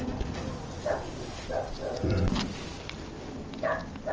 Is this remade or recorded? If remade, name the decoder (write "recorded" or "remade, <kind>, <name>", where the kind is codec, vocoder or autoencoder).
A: recorded